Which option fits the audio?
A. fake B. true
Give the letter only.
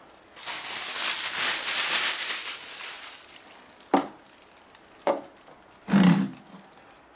B